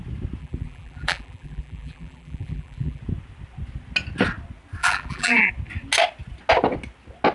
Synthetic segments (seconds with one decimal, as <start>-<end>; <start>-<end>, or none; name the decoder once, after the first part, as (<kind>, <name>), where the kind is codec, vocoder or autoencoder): 0.4-3.0 (vocoder, BigVGAN v2); 4.8-5.5